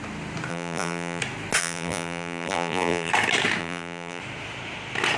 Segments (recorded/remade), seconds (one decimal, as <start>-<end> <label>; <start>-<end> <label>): 0.0-0.5 recorded; 0.5-1.2 remade; 1.2-1.6 recorded; 1.6-3.1 remade; 3.1-3.6 recorded; 3.6-4.2 remade; 4.2-5.2 recorded